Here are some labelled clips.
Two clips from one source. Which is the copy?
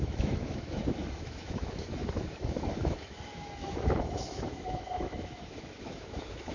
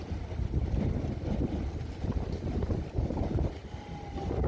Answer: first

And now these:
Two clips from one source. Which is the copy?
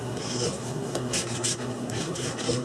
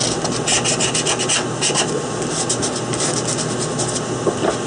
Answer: first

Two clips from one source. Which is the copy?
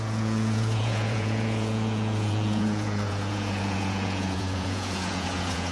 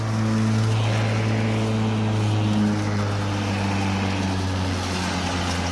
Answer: first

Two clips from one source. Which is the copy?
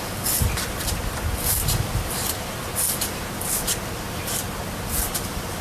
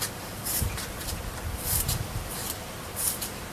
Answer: second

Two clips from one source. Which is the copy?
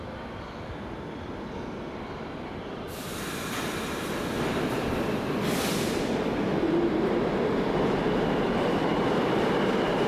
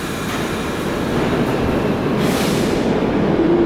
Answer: first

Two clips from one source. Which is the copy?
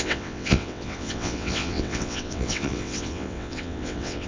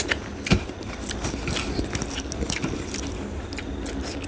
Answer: first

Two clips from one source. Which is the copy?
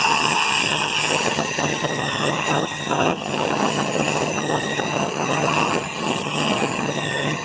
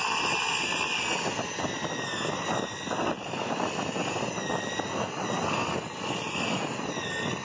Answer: first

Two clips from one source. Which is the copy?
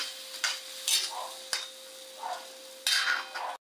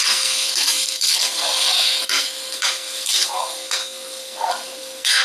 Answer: second